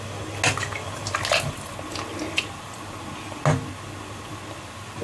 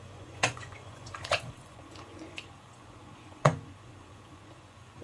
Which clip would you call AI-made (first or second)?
second